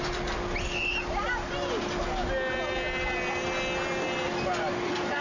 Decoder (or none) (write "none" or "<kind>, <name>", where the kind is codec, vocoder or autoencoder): none